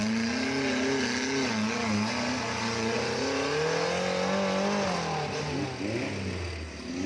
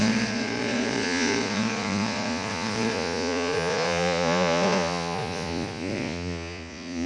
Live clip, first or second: first